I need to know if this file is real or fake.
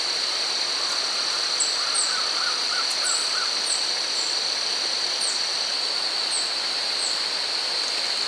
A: real